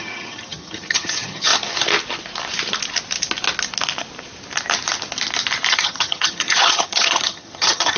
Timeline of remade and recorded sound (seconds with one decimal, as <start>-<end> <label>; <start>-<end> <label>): 0.0-1.5 remade; 1.5-5.7 recorded; 5.7-8.0 remade